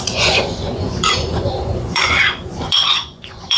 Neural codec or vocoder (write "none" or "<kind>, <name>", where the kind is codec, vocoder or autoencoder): vocoder, Vocos